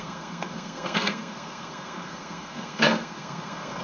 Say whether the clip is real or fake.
fake